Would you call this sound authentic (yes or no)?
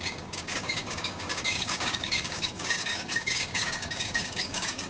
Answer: no